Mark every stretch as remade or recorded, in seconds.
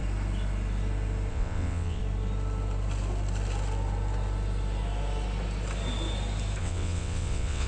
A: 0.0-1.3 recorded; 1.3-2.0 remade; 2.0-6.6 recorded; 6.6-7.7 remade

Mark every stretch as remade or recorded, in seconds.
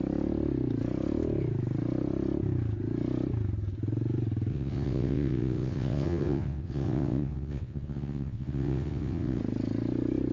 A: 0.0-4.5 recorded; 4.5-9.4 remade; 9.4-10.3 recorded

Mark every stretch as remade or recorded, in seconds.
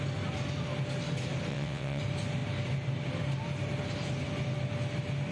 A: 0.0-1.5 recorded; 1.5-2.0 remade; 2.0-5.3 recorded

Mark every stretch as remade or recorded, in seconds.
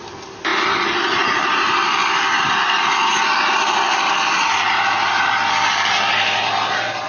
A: 0.0-7.1 recorded